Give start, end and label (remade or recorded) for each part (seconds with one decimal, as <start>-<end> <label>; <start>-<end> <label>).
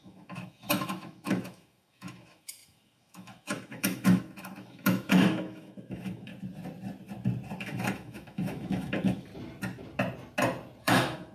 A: 0.0-6.3 remade; 6.3-7.6 recorded; 7.6-9.3 remade; 9.3-10.8 recorded; 10.8-11.3 remade